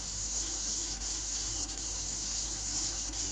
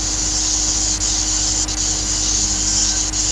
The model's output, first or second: first